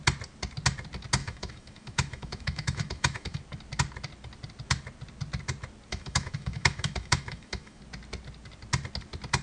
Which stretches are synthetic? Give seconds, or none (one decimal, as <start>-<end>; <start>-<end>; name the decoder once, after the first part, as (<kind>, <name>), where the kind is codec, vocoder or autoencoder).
1.2-3.4 (autoencoder, DAC-VAE); 5.9-7.8